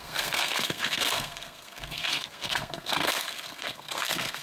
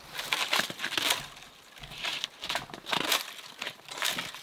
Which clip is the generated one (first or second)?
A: first